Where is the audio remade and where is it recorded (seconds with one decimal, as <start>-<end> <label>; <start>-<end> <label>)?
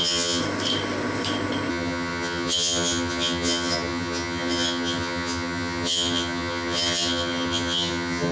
0.0-0.4 remade; 0.4-1.7 recorded; 1.7-8.3 remade